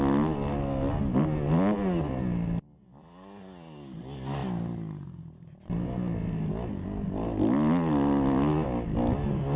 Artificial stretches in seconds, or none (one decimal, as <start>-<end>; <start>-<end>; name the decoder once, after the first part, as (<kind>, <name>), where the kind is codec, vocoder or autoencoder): none